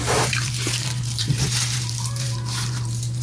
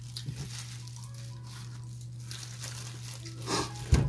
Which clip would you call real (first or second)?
second